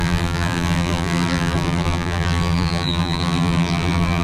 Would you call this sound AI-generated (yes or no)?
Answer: yes